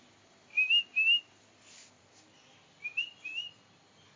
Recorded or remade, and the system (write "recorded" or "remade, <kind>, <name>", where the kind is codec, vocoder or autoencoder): recorded